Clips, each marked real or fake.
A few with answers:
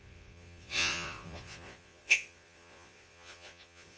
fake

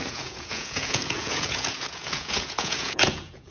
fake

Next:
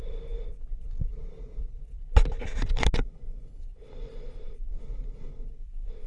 real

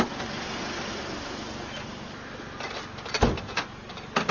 real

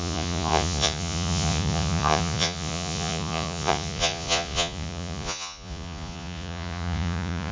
fake